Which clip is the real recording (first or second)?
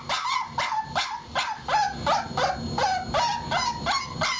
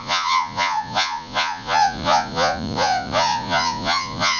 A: first